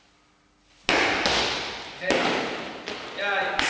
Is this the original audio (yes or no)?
yes